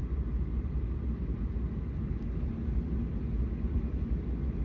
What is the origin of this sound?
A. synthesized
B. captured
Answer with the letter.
B